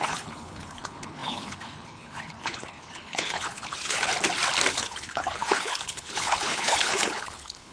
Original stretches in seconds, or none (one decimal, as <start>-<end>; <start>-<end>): 4.1-4.7